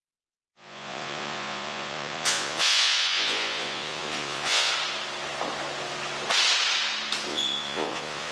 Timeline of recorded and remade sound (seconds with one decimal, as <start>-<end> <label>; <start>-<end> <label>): 0.0-4.7 remade; 4.7-7.3 recorded; 7.3-8.3 remade